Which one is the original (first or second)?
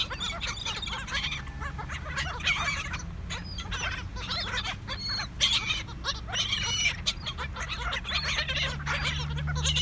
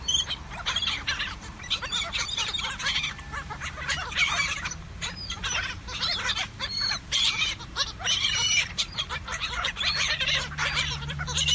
first